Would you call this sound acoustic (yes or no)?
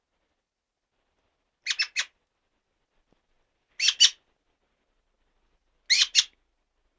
yes